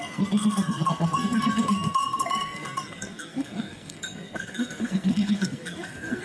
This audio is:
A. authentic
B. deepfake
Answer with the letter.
B